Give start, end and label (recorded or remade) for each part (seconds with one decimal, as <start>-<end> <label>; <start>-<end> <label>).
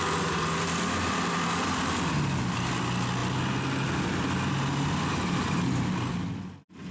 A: 0.0-5.1 recorded; 5.1-6.0 remade; 6.0-6.9 recorded